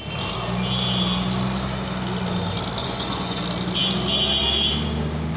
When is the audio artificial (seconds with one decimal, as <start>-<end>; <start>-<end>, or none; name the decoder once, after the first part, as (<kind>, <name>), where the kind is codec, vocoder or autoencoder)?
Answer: 2.8-3.4 (vocoder, Vocos)